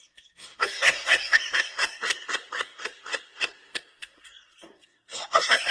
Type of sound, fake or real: fake